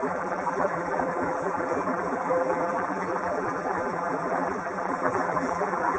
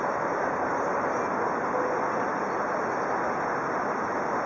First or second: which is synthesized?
first